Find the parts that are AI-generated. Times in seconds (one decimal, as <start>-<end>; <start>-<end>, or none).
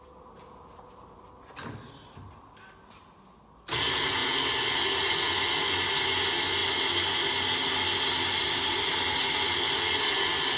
none